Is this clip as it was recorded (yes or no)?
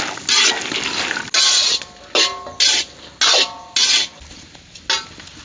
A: yes